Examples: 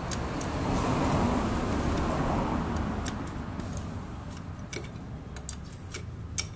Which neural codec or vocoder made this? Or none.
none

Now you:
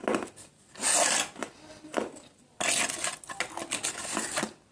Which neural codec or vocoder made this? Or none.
none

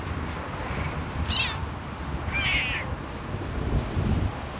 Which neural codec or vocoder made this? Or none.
none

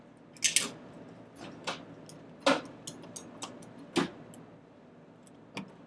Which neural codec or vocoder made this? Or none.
none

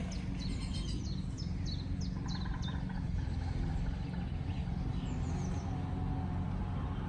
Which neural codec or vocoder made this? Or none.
none